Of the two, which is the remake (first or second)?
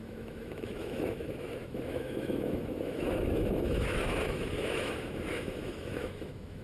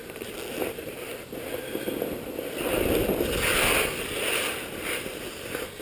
first